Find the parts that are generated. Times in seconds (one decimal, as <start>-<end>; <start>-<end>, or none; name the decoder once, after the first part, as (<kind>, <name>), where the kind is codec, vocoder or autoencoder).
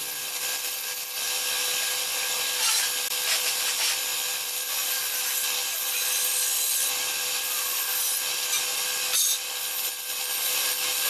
none